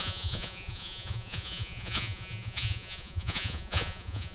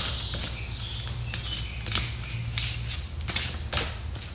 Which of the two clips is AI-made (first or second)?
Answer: first